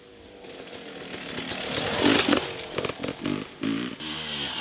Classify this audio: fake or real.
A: real